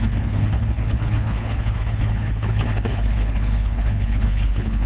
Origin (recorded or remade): remade